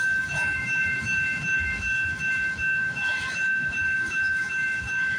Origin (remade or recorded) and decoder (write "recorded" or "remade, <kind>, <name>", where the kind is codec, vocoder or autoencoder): remade, autoencoder, DAC-VAE